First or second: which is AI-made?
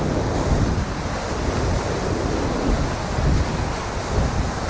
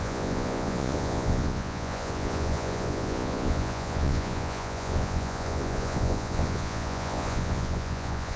second